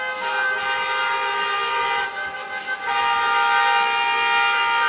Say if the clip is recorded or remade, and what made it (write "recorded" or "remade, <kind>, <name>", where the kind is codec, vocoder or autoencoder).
recorded